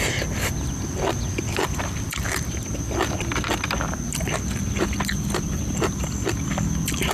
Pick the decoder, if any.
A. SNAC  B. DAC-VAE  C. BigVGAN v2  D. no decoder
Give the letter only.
D